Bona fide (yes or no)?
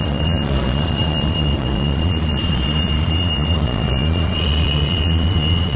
no